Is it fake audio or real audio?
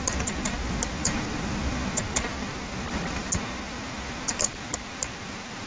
real